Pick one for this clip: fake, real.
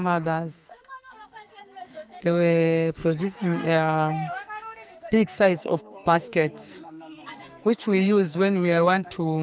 fake